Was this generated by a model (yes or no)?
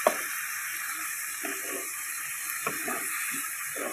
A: no